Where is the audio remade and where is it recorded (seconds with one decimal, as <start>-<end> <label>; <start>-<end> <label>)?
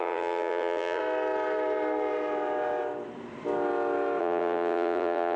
0.0-1.0 remade; 1.0-4.2 recorded; 4.2-5.4 remade